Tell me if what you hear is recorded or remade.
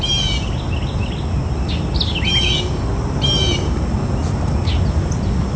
recorded